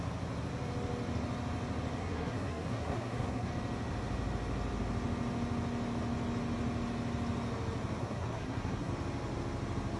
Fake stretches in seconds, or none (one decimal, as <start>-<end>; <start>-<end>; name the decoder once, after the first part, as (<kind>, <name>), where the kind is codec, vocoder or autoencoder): 2.0-3.5 (codec, SNAC); 8.0-8.9